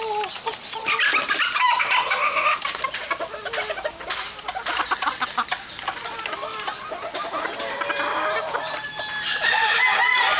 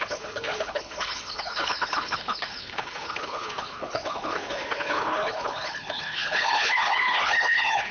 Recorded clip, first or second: first